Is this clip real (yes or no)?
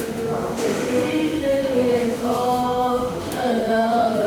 no